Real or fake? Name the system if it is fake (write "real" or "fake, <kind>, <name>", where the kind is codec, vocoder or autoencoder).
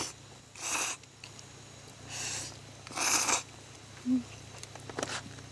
real